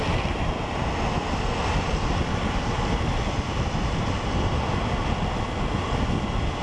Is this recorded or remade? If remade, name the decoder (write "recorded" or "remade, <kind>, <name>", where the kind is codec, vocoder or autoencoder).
recorded